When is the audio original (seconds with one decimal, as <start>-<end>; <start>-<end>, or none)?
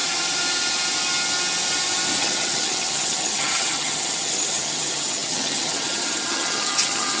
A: 0.0-2.2